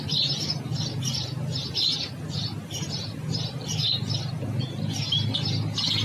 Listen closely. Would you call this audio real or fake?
real